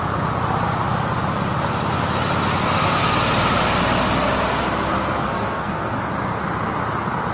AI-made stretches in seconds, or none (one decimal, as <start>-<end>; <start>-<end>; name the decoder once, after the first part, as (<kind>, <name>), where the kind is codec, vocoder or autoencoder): 5.2-6.0 (codec, SNAC)